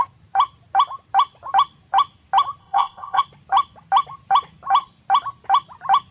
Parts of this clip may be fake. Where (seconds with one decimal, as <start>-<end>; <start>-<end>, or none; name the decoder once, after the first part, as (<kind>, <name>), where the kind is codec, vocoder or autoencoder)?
2.6-3.2 (codec, ZipCodec)